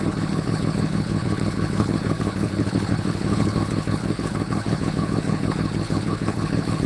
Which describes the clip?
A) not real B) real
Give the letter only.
A